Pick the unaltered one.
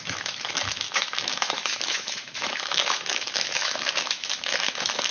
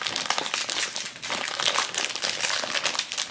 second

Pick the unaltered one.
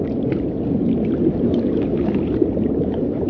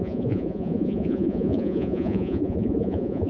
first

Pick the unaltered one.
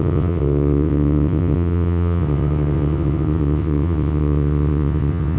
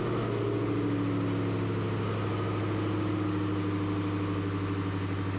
second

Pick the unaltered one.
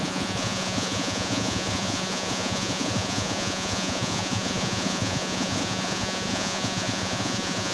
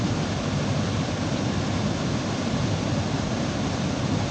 second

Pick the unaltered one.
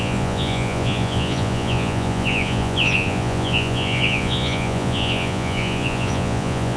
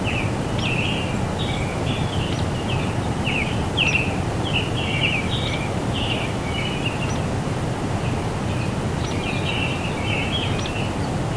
second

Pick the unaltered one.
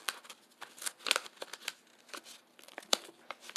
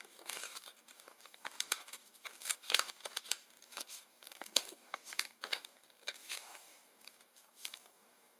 first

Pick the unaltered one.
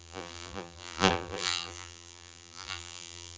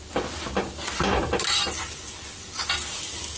second